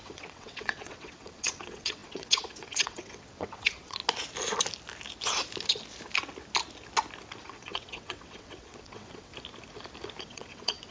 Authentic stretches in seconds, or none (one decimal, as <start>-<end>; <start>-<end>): 4.0-7.4; 9.3-10.2